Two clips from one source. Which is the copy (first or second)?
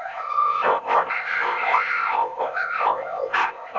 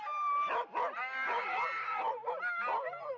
first